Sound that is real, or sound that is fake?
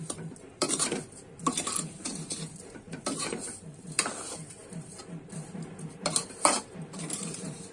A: fake